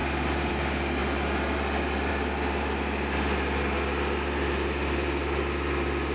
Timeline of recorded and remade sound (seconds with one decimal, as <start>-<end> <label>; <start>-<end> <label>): 0.0-6.1 recorded